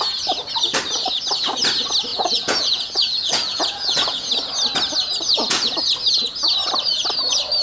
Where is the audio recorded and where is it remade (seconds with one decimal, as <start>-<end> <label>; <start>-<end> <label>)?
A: 0.0-2.1 recorded; 2.1-4.3 remade; 4.3-5.3 recorded; 5.3-5.9 remade; 5.9-7.6 recorded